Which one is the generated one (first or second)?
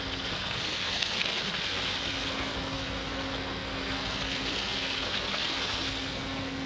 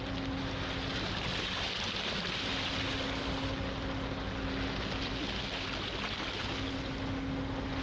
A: first